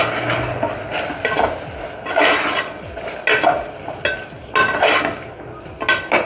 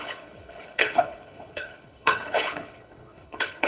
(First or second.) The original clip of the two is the first